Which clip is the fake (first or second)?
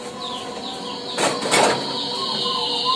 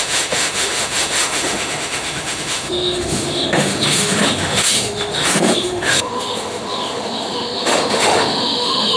second